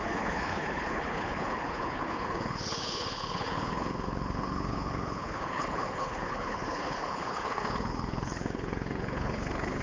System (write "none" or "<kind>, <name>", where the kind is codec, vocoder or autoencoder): codec, HILCodec